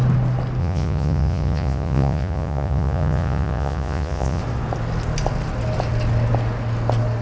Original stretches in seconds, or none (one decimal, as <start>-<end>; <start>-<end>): 0.0-0.6; 4.4-7.2